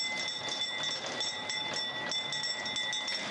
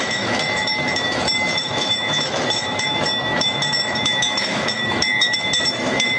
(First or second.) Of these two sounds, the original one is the first